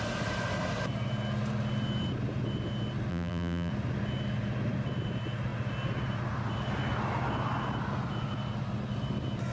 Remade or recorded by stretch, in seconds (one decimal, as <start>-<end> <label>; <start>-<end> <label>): 0.0-3.1 recorded; 3.1-3.7 remade; 3.7-9.5 recorded